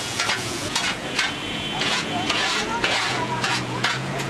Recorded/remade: remade